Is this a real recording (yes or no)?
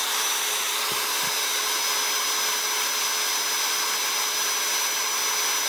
yes